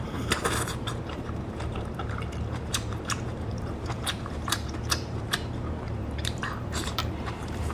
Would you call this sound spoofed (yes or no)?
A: yes